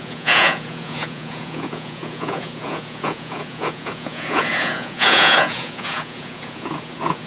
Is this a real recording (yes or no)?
no